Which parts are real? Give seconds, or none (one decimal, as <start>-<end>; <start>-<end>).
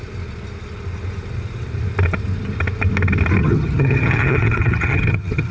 0.0-3.4